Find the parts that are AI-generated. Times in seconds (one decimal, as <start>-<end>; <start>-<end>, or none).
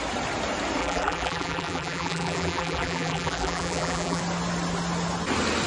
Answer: 0.8-4.2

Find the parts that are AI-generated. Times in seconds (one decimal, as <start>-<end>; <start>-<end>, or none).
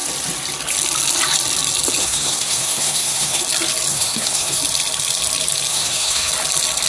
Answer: 2.0-3.4; 3.9-4.6; 5.7-6.3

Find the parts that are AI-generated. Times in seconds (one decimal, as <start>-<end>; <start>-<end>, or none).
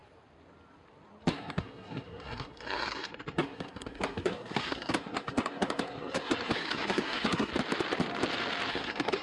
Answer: 1.3-7.5; 8.7-9.2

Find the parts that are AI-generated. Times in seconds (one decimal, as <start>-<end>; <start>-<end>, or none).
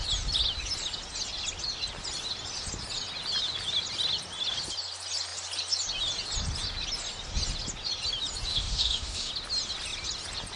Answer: 8.5-9.3